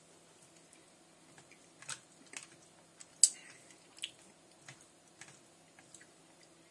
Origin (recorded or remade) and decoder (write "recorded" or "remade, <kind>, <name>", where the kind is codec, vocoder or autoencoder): recorded